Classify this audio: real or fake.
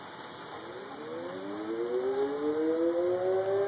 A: real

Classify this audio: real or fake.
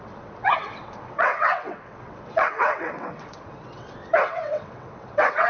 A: fake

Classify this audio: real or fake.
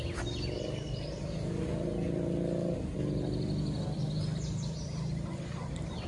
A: real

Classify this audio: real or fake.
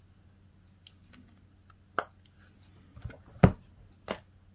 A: real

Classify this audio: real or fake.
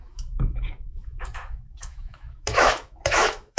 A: fake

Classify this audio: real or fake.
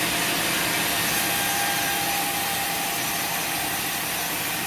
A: real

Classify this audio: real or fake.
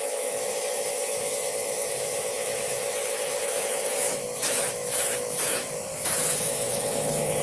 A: fake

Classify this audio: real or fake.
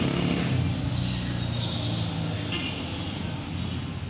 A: real